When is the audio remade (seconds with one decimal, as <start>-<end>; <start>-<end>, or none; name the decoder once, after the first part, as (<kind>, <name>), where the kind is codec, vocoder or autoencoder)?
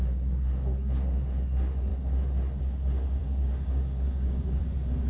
3.2-4.6 (codec, DAC)